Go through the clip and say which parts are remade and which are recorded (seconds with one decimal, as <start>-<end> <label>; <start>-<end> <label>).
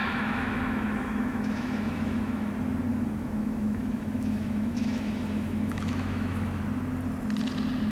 0.0-2.5 remade; 2.5-2.9 recorded; 2.9-6.6 remade; 6.6-7.9 recorded